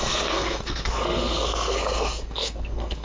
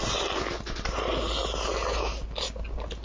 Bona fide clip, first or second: second